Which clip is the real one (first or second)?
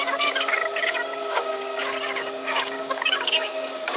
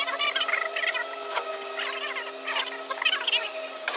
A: second